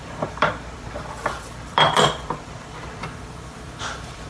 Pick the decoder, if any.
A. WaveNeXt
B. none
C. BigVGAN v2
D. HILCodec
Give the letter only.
C